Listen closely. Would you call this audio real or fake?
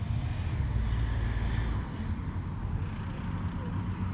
real